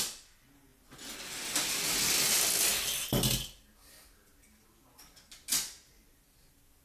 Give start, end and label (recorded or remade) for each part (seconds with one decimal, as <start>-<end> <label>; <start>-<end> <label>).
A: 0.0-6.8 recorded